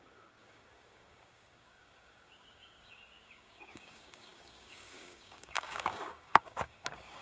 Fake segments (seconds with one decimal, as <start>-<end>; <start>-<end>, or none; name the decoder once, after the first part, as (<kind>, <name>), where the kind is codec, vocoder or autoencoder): 0.0-7.2 (codec, DAC)